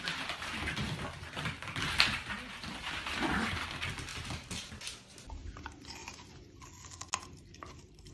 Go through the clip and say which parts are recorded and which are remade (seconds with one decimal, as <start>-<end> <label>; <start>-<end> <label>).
0.0-8.1 recorded